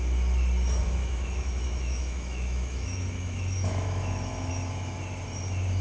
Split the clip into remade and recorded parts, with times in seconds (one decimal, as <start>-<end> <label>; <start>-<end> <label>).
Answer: 0.0-1.0 recorded; 1.0-4.5 remade; 4.5-5.8 recorded